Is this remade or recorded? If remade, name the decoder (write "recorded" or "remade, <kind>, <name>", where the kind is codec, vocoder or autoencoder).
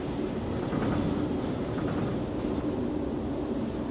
recorded